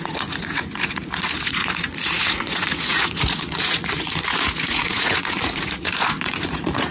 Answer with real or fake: fake